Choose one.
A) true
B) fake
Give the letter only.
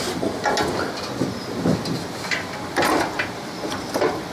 A